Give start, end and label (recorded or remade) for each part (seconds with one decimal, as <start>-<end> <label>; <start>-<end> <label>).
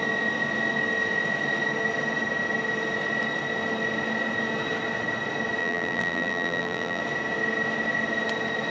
0.0-5.6 recorded; 5.6-7.0 remade; 7.0-8.7 recorded